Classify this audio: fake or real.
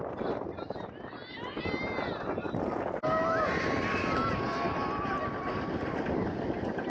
real